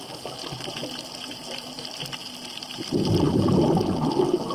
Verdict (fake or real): real